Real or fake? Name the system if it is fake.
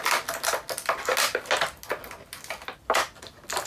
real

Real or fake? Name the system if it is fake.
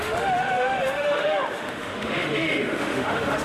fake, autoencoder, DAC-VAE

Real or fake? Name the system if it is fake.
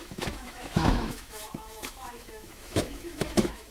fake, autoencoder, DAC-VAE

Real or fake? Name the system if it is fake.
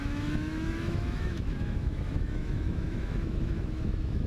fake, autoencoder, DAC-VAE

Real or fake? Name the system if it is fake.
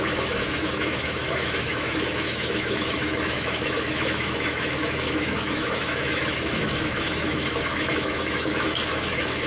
fake, autoencoder, DAC-VAE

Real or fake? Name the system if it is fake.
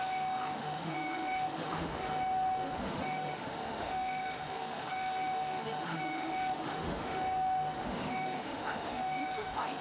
fake, autoencoder, DAC-VAE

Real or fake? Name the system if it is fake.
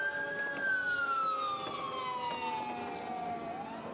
real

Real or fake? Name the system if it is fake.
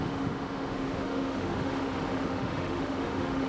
fake, autoencoder, DAC-VAE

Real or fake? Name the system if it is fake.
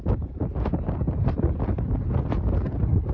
real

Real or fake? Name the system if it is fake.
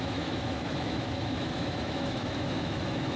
fake, autoencoder, DAC-VAE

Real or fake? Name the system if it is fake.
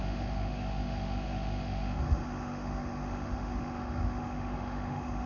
fake, autoencoder, DAC-VAE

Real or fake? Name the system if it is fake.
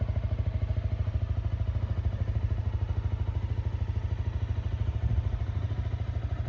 real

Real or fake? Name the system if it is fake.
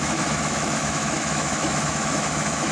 fake, autoencoder, DAC-VAE